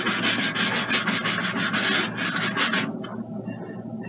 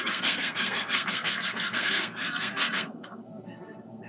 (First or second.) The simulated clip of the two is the second